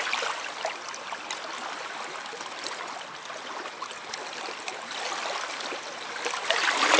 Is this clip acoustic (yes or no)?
yes